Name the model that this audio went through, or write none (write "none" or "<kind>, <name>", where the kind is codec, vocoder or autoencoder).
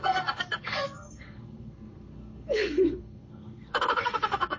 codec, SNAC